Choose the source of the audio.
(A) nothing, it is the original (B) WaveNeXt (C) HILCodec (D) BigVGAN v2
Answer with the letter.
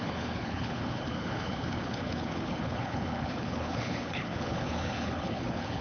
C